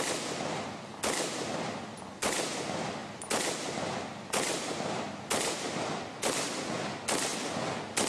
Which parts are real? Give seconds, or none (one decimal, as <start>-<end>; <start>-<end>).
7.3-8.1